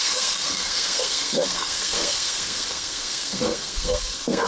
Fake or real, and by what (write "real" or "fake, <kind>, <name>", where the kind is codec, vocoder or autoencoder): fake, codec, SNAC